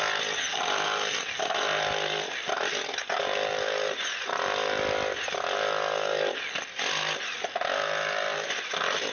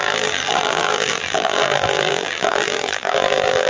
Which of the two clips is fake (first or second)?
second